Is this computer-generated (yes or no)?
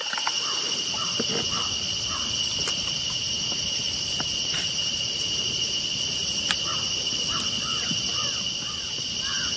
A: no